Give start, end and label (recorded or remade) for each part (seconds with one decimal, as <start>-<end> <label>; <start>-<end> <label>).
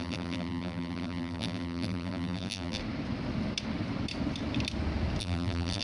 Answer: 0.0-2.8 remade; 2.8-5.2 recorded; 5.2-5.8 remade